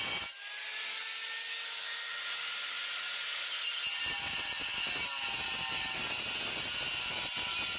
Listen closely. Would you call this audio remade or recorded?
recorded